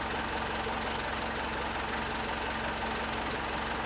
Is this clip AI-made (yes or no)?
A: no